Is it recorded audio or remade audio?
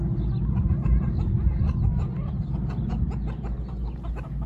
recorded